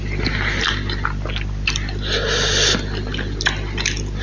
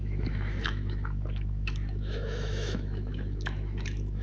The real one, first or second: first